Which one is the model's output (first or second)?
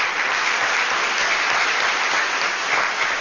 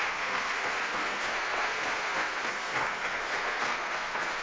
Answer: second